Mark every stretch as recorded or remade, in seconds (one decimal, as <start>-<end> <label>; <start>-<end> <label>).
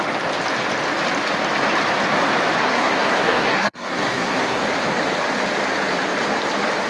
0.0-2.6 recorded; 2.6-4.6 remade; 4.6-6.9 recorded